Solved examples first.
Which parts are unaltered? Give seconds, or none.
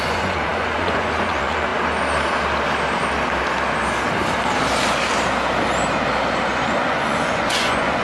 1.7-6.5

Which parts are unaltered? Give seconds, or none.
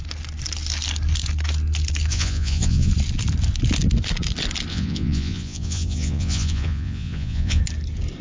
0.0-2.1; 2.9-4.7; 7.6-8.2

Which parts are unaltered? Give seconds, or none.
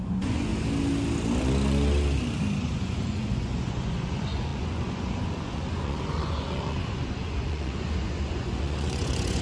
0.5-2.6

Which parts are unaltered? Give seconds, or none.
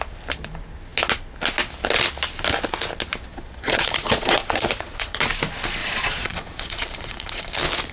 0.0-3.3; 5.2-5.8; 7.4-7.9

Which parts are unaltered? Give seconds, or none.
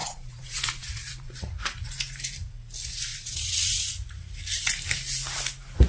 1.9-3.1; 4.4-5.9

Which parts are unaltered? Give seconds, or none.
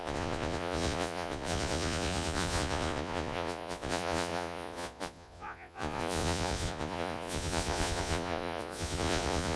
none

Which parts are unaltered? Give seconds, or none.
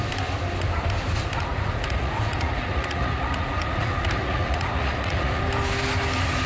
0.0-1.5; 5.4-6.5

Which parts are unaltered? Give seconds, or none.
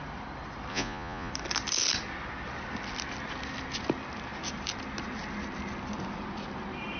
0.0-0.7; 1.3-7.0